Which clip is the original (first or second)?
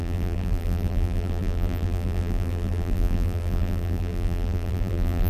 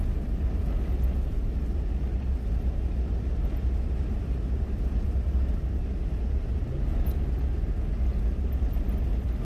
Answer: second